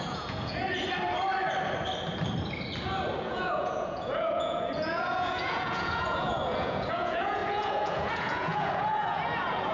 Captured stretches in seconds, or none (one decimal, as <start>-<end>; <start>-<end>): 0.6-3.2